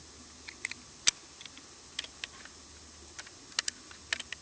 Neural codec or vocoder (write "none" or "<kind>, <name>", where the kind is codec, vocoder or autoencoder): none